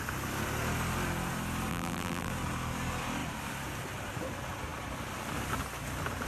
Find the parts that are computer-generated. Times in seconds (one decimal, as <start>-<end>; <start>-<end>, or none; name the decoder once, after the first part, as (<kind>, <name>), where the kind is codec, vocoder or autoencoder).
1.7-2.3 (vocoder, BigVGAN v2)